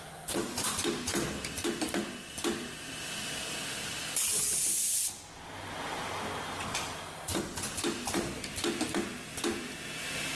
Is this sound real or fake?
real